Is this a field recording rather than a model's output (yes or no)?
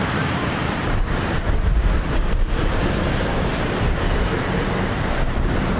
no